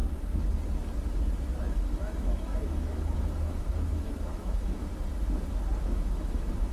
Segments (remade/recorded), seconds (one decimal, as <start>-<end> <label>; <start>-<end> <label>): 0.0-1.6 recorded; 1.6-4.9 remade; 4.9-5.8 recorded; 5.8-6.7 remade